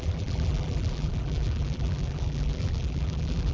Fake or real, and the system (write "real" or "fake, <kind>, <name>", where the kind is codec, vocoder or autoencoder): fake, vocoder, BigVGAN v2